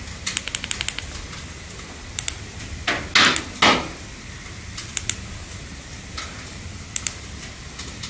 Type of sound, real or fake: real